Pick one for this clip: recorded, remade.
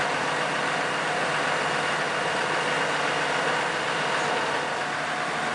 recorded